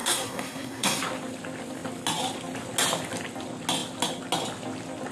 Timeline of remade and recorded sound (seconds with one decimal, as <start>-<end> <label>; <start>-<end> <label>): 0.0-1.0 remade; 1.0-5.1 recorded

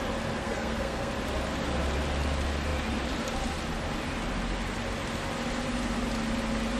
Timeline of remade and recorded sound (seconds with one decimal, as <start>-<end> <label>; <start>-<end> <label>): 0.0-0.4 recorded; 0.4-1.1 remade; 1.1-6.8 recorded

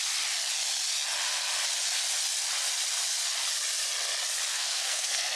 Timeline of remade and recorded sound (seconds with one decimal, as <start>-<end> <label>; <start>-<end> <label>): 0.0-4.5 recorded; 4.5-5.4 remade

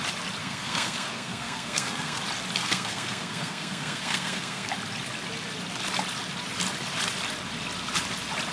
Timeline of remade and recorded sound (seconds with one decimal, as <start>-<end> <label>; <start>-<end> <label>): 0.0-0.4 recorded; 0.4-2.2 remade; 2.2-2.6 recorded; 2.6-4.7 remade; 4.7-8.5 recorded

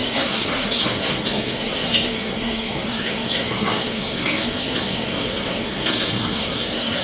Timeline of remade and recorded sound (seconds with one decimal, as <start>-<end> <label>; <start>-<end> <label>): 0.0-7.0 remade

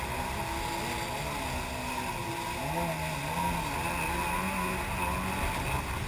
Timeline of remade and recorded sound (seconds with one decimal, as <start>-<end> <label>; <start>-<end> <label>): 0.0-6.1 recorded